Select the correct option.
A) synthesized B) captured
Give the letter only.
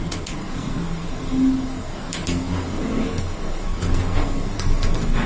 A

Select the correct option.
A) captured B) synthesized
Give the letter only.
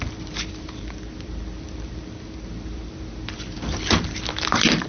B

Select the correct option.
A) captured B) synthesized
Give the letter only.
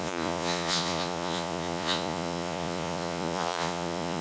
B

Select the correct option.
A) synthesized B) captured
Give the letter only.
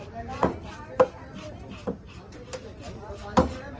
B